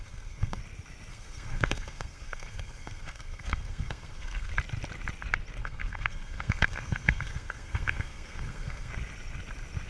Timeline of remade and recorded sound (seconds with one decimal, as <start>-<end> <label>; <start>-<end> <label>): 0.0-0.6 remade; 0.6-1.1 recorded; 1.1-4.5 remade; 4.5-5.6 recorded; 5.6-8.9 remade; 8.9-9.9 recorded